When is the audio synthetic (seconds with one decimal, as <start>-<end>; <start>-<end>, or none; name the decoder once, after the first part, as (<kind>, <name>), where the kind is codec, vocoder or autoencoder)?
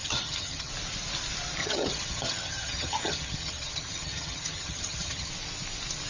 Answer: 0.0-0.7 (vocoder, HiFi-GAN); 1.6-5.3